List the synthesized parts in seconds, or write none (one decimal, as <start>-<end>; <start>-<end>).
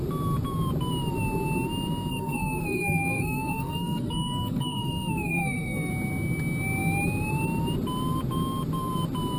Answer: 2.1-5.9